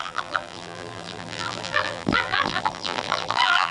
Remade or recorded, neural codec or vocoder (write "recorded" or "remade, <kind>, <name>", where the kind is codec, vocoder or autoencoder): remade, vocoder, BigVGAN v2